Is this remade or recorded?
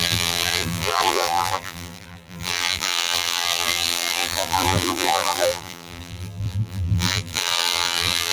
remade